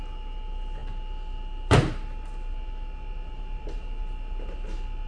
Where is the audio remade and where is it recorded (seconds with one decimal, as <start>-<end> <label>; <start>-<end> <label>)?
0.0-5.1 recorded